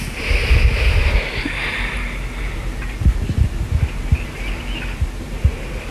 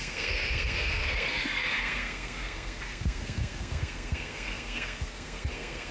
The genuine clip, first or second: first